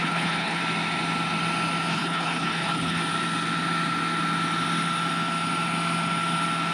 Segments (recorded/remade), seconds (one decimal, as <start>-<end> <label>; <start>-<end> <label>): 0.0-0.6 remade; 0.6-1.9 recorded; 1.9-3.0 remade; 3.0-6.7 recorded